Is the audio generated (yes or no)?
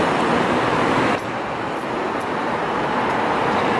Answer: no